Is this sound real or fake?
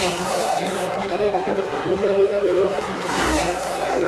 fake